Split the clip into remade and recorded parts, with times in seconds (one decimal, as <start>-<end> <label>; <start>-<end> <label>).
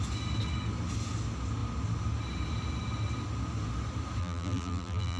0.0-4.2 recorded; 4.2-5.2 remade